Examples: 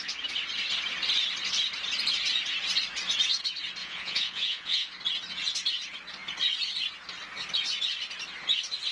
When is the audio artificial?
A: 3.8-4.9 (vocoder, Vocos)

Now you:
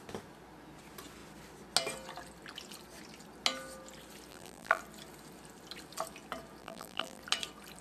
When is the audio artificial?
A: 4.3-4.8 (vocoder, BigVGAN v2); 6.6-7.2

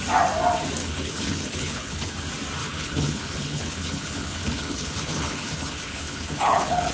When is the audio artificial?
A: 0.8-2.1 (codec, HILCodec); 2.6-6.9

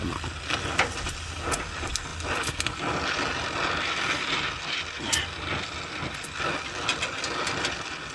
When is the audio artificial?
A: none

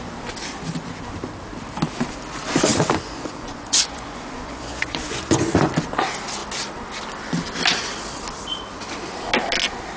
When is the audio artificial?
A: 2.7-5.7 (vocoder, Vocos)

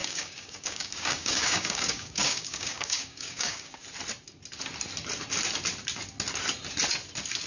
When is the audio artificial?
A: 0.0-3.8 (codec, DAC)